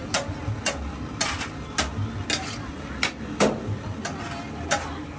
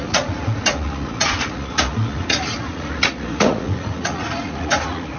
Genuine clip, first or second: first